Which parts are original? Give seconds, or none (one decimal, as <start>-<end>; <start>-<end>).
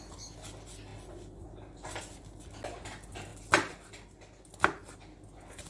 0.0-5.7